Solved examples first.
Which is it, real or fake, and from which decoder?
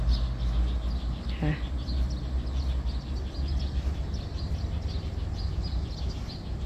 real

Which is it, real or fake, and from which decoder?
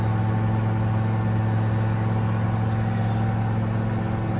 real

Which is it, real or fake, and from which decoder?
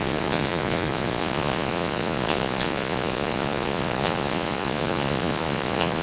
fake, vocoder, Vocos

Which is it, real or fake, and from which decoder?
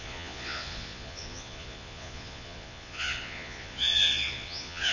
fake, vocoder, Vocos